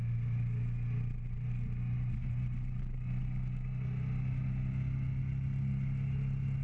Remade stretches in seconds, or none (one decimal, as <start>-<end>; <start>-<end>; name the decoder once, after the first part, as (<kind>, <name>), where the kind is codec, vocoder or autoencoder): none